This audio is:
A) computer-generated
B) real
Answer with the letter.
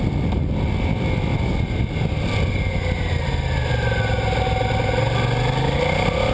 B